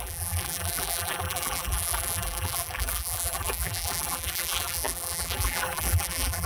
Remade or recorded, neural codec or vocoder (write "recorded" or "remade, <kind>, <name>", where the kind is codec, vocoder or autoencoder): remade, vocoder, BigVGAN v2